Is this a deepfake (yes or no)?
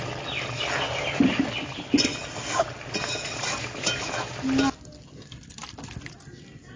no